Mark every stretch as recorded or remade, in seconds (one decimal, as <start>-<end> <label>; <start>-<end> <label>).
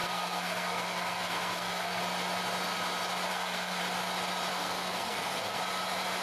0.0-2.0 remade; 2.0-3.3 recorded; 3.3-3.8 remade; 3.8-4.5 recorded; 4.5-5.6 remade; 5.6-6.2 recorded